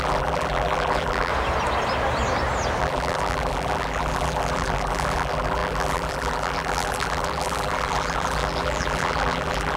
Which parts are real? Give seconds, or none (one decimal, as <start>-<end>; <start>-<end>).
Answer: 1.3-2.8